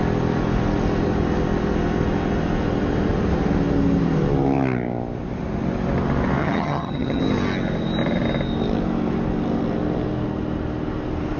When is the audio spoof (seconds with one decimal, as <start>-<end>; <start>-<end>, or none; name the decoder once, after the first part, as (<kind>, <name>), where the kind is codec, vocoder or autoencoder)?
6.4-7.2 (vocoder, HiFi-GAN)